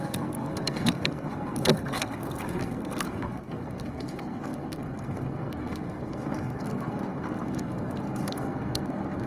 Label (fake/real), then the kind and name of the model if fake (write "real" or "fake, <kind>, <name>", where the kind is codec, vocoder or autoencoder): fake, codec, SNAC